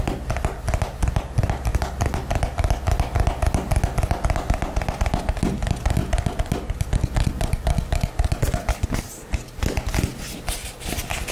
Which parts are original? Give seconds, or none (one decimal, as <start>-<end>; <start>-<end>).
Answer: 0.0-11.3